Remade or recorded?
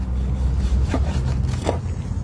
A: recorded